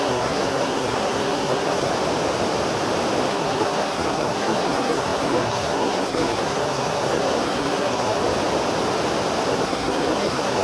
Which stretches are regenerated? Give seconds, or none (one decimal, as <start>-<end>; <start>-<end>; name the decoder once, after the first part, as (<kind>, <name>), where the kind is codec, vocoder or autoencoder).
0.0-1.9 (codec, SNAC); 3.3-8.2; 9.5-10.6

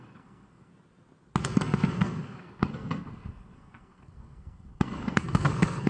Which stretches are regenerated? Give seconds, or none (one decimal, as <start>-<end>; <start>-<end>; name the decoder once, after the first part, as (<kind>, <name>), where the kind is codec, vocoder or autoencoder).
0.0-0.7 (codec, SNAC); 1.4-5.9

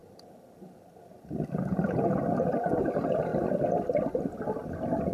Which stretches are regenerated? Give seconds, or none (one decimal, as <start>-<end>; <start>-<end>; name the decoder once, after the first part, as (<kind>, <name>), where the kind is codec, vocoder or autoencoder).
none

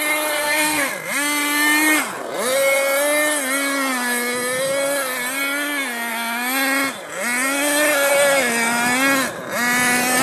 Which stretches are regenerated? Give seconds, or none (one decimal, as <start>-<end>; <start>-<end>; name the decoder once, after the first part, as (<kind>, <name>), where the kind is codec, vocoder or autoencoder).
0.4-0.9 (codec, SNAC)

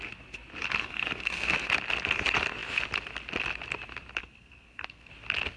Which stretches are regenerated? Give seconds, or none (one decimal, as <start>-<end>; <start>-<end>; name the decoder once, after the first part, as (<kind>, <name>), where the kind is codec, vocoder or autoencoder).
0.8-1.7 (codec, SNAC); 4.2-5.1